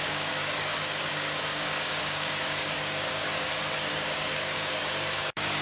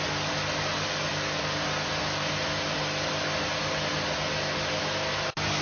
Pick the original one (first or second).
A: second